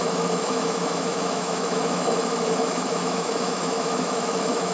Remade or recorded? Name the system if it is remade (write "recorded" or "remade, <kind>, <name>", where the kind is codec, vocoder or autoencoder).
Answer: remade, autoencoder, DAC-VAE